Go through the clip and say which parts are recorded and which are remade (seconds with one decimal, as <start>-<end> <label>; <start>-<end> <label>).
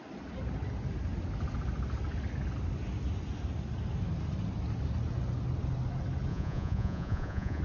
0.0-6.3 recorded; 6.3-7.6 remade